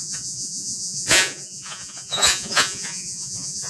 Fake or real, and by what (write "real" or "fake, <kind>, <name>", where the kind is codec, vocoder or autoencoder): fake, vocoder, Vocos